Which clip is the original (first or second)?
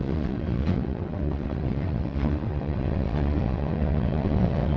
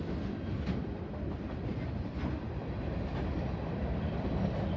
second